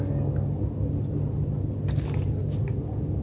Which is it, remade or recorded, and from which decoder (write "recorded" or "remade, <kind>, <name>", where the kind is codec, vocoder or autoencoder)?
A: recorded